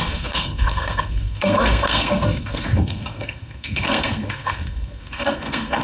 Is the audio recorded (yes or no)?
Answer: no